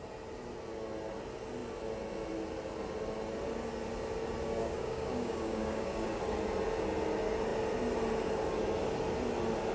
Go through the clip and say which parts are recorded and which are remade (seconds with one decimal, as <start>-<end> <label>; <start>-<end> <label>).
0.0-4.6 recorded; 4.6-6.2 remade; 6.2-9.7 recorded

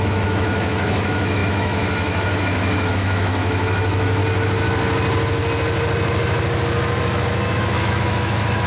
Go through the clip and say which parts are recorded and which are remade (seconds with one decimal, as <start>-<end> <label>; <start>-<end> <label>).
0.0-4.2 remade; 4.2-7.6 recorded; 7.6-8.7 remade

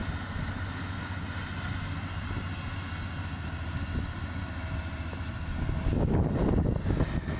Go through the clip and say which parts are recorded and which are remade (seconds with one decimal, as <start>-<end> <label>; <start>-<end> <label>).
0.0-7.4 recorded

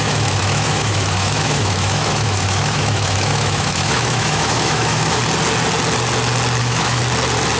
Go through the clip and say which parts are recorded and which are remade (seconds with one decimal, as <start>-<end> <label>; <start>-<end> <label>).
0.0-5.2 remade; 5.2-6.6 recorded; 6.6-7.0 remade; 7.0-7.6 recorded

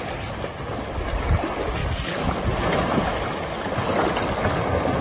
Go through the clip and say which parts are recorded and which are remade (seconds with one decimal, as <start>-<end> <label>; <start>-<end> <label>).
0.0-5.0 recorded